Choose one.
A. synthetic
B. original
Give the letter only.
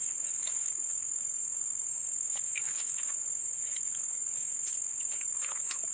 A